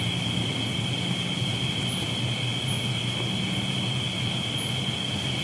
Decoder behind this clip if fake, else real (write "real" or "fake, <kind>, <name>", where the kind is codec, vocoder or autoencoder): real